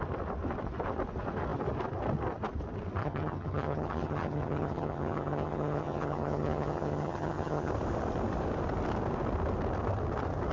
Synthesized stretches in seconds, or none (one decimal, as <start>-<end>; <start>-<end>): 3.0-7.7